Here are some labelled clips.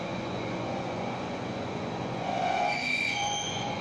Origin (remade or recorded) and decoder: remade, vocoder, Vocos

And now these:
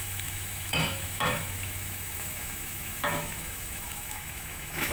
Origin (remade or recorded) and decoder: remade, autoencoder, DAC-VAE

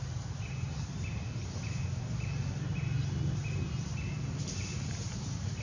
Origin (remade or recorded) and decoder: recorded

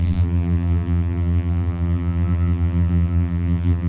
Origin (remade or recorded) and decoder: remade, vocoder, BigVGAN v2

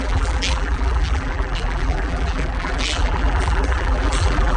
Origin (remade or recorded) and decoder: remade, vocoder, BigVGAN v2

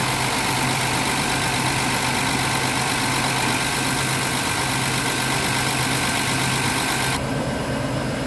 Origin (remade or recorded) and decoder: recorded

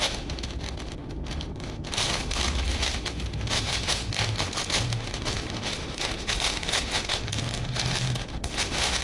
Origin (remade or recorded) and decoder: remade, autoencoder, DAC-VAE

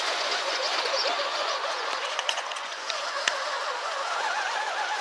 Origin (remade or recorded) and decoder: remade, vocoder, Vocos